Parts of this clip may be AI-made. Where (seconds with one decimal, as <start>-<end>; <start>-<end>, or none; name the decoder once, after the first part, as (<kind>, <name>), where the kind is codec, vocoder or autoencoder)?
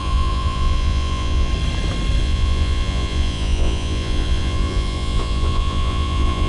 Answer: 0.0-1.5 (vocoder, Vocos); 2.2-6.5